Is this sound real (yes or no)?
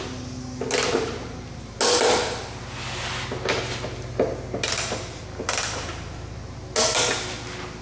yes